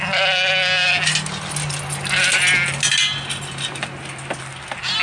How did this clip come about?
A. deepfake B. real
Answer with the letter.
B